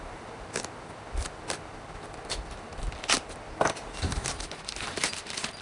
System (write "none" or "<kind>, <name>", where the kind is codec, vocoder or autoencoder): none